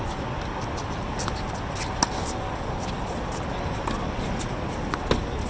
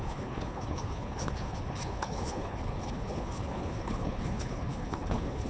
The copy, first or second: second